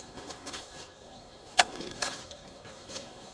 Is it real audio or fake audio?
fake